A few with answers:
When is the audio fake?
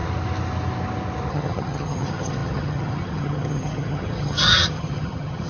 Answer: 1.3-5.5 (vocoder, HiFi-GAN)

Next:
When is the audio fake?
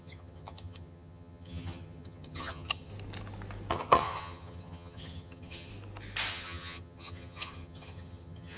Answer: 0.0-2.9 (vocoder, HiFi-GAN); 3.7-5.7; 6.3-8.6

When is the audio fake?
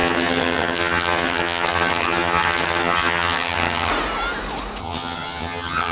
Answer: 0.0-3.9 (vocoder, HiFi-GAN); 4.8-5.9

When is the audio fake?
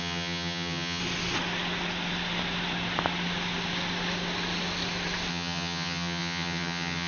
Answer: 0.0-1.0 (vocoder, HiFi-GAN); 5.3-7.1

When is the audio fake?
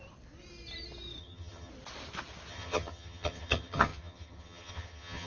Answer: 1.2-1.7 (vocoder, HiFi-GAN); 2.5-5.3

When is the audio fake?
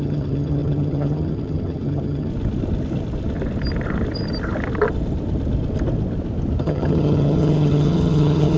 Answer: 0.0-2.3 (vocoder, HiFi-GAN); 6.6-8.6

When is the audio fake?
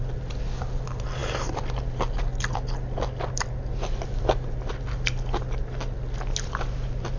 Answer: none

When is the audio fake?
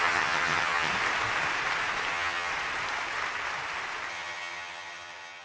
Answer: 0.0-0.9 (vocoder, HiFi-GAN); 2.1-2.5; 4.1-5.4